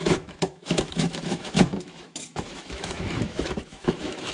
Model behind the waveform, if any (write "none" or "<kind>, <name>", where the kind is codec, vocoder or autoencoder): autoencoder, DAC-VAE